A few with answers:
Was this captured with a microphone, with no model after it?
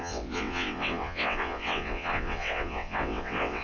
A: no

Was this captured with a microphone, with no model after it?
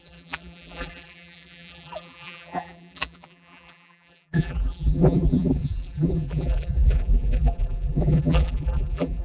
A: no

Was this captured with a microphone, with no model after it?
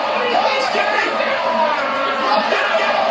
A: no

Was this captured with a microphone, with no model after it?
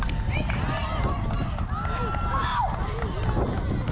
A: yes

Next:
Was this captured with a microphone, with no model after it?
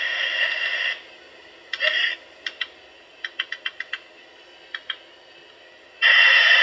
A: yes